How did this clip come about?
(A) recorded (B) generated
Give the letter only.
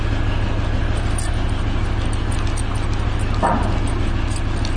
A